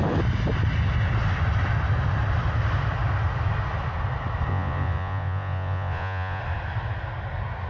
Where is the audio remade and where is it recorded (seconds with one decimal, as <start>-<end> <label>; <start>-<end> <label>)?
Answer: 0.0-4.5 recorded; 4.5-6.4 remade; 6.4-7.7 recorded